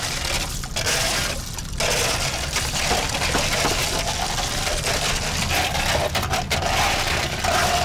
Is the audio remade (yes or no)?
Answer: no